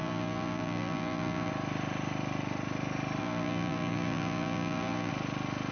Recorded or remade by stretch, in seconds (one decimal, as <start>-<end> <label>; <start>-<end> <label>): 0.0-1.5 remade; 1.5-3.2 recorded; 3.2-5.1 remade; 5.1-5.7 recorded